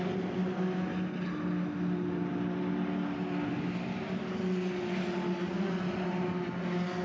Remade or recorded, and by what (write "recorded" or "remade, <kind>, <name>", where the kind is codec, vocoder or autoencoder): recorded